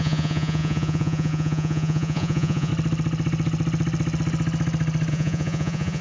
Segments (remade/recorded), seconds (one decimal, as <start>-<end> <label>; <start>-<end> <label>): 0.0-2.7 remade; 2.7-5.1 recorded; 5.1-6.0 remade